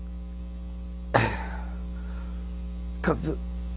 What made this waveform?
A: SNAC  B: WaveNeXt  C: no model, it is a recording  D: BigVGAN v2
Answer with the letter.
C